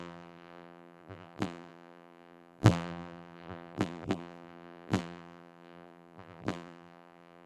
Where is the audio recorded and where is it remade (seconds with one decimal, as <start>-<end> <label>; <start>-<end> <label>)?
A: 0.0-7.5 remade